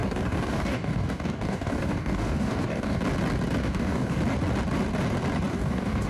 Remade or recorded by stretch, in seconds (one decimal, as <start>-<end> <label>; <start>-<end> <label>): 0.0-3.0 remade; 3.0-3.6 recorded; 3.6-4.2 remade; 4.2-5.5 recorded; 5.5-6.1 remade